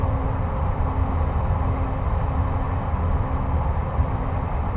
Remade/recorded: recorded